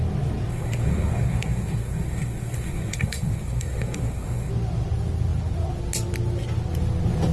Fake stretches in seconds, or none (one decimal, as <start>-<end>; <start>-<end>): 0.5-4.5